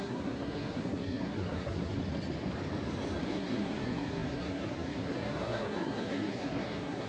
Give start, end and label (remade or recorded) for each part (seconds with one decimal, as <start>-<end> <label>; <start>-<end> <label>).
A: 0.0-2.0 remade; 2.0-3.2 recorded; 3.2-7.1 remade